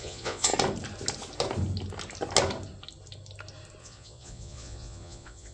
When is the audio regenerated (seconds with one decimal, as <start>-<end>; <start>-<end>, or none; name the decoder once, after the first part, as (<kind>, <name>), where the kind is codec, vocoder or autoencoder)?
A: 0.0-0.5 (vocoder, Vocos); 3.8-5.5